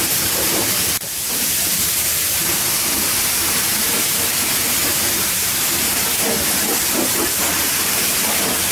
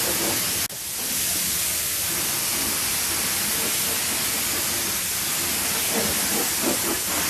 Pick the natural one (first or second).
second